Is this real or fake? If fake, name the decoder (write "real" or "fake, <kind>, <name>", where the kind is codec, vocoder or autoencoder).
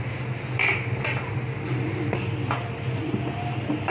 real